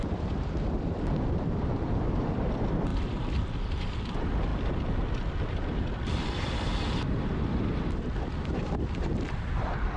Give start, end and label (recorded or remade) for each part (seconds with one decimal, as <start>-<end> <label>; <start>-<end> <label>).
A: 0.0-10.0 remade

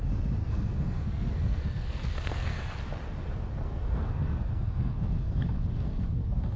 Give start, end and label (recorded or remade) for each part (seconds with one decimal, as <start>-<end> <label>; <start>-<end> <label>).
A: 0.0-0.4 recorded; 0.4-2.6 remade; 2.6-3.6 recorded; 3.6-6.6 remade